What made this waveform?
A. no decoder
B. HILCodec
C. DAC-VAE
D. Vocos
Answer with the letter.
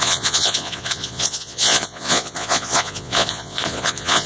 D